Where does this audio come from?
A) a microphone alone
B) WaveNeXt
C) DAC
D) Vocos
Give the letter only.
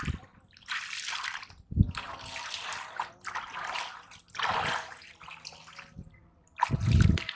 A